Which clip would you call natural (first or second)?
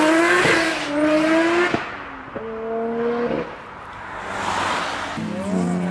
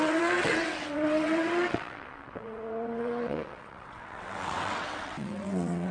first